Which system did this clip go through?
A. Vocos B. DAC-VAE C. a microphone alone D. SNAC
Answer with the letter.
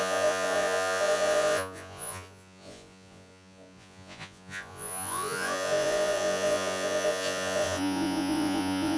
A